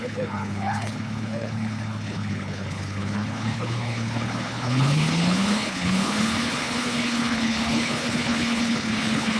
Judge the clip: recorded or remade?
remade